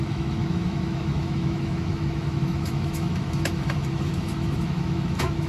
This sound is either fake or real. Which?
fake